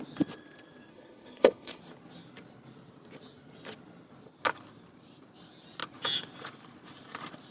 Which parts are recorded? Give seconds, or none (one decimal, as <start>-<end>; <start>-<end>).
0.0-0.9; 1.8-7.5